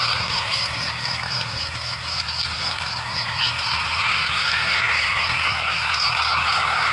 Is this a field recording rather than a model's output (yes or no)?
no